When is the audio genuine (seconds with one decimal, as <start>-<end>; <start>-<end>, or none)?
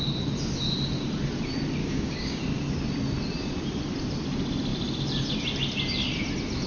0.0-1.8; 2.4-6.7